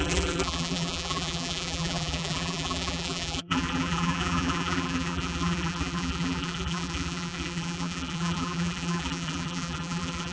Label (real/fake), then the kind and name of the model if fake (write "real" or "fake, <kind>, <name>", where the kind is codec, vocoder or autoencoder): fake, vocoder, BigVGAN v2